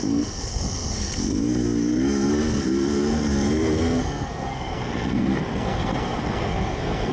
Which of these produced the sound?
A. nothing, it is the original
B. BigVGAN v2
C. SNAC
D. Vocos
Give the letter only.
C